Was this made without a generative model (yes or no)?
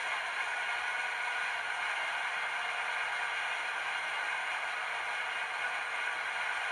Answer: yes